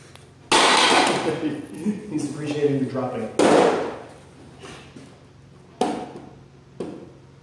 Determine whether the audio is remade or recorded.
recorded